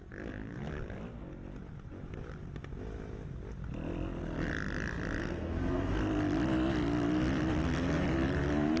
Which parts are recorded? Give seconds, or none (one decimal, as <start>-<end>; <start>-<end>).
0.0-5.2; 6.0-8.8